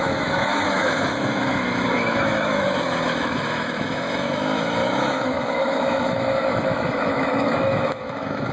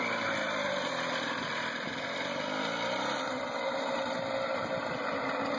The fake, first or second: first